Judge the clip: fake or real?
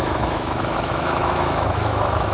fake